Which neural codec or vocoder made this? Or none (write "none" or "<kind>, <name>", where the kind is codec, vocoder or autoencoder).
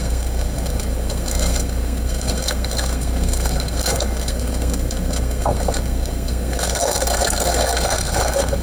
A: codec, SNAC